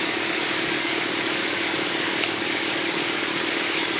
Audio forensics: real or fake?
fake